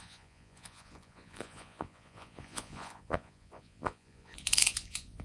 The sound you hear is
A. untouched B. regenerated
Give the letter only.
B